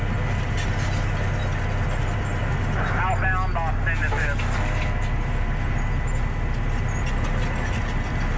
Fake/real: real